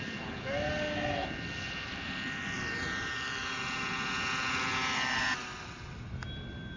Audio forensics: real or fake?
real